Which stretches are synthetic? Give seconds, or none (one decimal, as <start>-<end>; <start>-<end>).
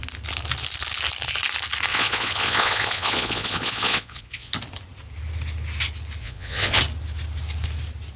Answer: 1.9-4.5; 6.2-6.8